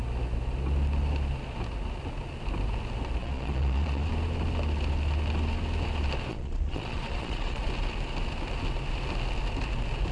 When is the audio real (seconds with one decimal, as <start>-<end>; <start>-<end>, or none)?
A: 0.0-3.2; 4.1-6.3; 7.7-10.1